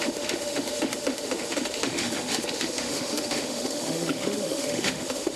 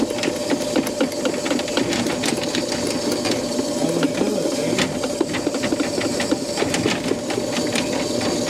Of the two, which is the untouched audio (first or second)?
second